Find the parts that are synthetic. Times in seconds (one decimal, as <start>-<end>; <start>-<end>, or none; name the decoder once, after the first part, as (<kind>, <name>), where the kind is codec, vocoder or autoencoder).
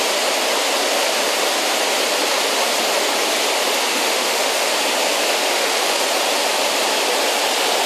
3.9-4.7 (autoencoder, DAC-VAE); 5.5-6.0